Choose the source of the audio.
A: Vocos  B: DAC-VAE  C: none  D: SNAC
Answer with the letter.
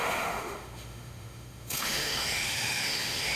B